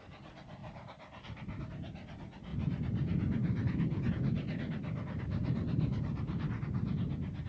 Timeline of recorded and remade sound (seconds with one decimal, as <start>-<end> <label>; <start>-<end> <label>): 0.0-0.6 recorded; 0.6-1.6 remade; 1.6-2.5 recorded; 2.5-4.1 remade; 4.1-5.4 recorded; 5.4-6.3 remade; 6.3-7.5 recorded